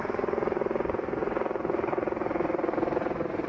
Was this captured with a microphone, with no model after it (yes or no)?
yes